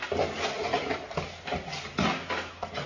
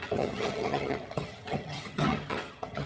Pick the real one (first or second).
first